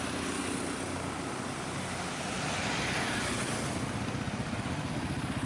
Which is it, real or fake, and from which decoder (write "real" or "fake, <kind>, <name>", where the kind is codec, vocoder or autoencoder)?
fake, vocoder, BigVGAN v2